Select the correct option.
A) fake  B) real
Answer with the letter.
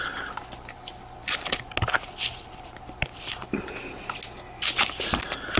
B